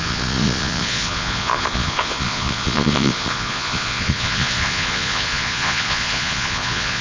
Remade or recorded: remade